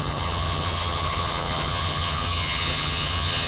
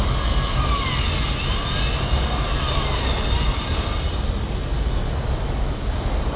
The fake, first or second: first